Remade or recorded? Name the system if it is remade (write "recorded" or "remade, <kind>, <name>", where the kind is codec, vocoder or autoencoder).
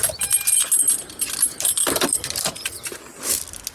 recorded